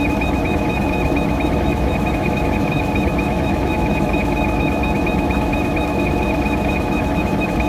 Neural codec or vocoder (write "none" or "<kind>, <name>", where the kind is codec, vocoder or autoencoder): autoencoder, DAC-VAE